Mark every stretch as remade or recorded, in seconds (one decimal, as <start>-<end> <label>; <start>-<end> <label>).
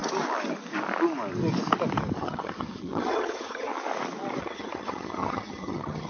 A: 0.0-2.2 recorded; 2.2-3.7 remade; 3.7-4.4 recorded; 4.4-6.1 remade